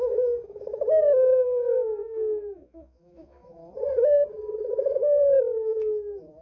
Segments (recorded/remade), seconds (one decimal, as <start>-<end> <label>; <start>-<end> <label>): 0.0-3.6 remade; 3.6-4.7 recorded; 4.7-6.4 remade